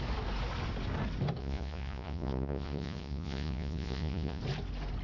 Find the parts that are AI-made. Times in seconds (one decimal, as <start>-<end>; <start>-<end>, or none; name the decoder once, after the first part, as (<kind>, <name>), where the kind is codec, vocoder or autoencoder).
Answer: 1.4-4.4 (vocoder, Vocos)